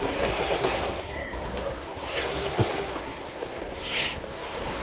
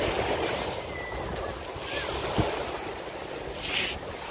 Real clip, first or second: second